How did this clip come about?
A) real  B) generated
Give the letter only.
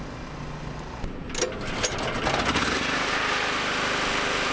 A